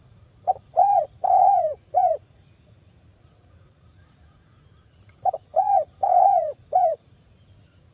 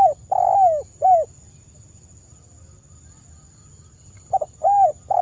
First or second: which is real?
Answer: second